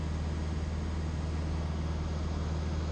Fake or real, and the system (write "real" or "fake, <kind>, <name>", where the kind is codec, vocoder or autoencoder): real